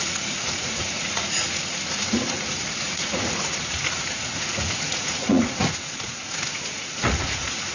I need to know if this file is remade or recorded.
remade